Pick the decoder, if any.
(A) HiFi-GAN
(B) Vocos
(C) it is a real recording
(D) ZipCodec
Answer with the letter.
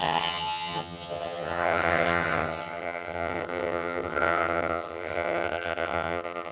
A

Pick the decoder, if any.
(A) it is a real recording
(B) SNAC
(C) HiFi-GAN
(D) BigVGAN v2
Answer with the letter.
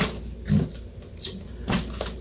A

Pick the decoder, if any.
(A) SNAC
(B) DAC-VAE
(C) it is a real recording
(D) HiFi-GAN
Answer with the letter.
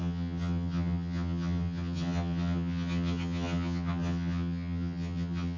D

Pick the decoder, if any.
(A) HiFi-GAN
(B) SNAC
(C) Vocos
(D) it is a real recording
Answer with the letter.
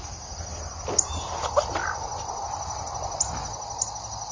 D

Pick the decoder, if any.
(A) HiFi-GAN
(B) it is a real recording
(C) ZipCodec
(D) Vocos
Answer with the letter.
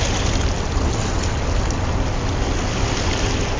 B